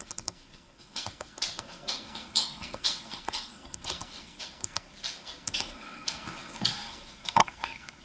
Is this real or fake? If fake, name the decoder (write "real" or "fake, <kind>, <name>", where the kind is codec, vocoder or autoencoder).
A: fake, codec, SNAC